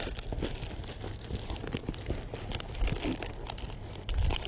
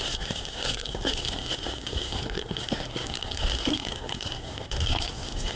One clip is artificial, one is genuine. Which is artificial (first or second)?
second